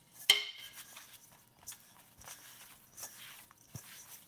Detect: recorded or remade recorded